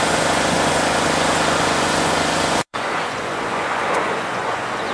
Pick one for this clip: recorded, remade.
remade